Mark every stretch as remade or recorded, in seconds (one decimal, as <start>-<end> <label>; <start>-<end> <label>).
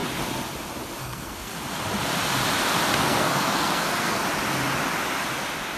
0.0-1.0 recorded; 1.0-1.5 remade; 1.5-3.0 recorded; 3.0-4.2 remade; 4.2-5.8 recorded